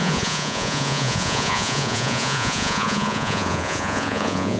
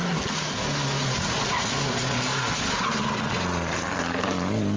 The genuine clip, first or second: second